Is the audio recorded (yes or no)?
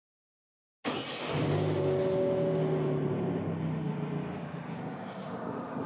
yes